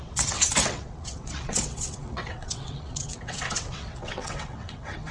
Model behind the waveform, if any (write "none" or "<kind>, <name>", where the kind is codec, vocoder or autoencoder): vocoder, WaveNeXt